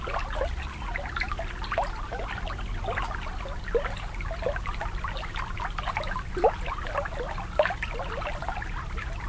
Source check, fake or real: real